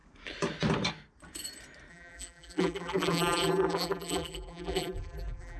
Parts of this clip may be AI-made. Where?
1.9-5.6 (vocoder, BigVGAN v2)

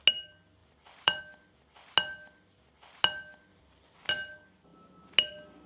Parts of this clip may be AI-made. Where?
0.6-1.2 (vocoder, BigVGAN v2); 3.5-4.1

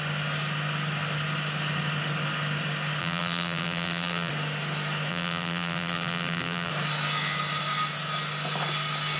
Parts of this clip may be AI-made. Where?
3.0-4.3 (vocoder, BigVGAN v2); 5.1-6.7

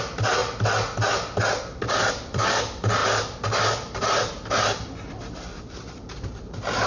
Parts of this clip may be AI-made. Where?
0.0-0.4 (vocoder, BigVGAN v2); 1.4-3.0; 5.7-6.9

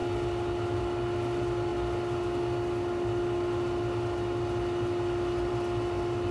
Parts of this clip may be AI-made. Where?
none

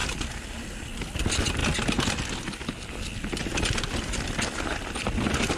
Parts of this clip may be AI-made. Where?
none

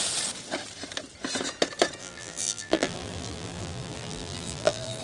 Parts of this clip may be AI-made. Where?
2.0-5.0 (vocoder, BigVGAN v2)

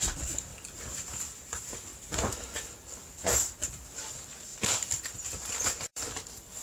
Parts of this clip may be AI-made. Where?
0.0-0.5 (vocoder, BigVGAN v2); 1.2-6.6